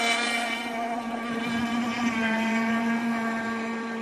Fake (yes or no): yes